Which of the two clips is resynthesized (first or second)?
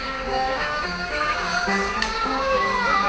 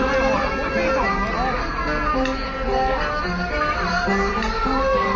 first